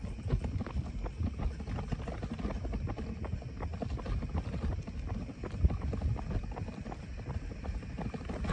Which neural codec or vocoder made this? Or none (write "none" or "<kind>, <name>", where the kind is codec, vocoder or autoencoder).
none